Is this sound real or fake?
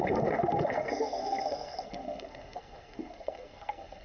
fake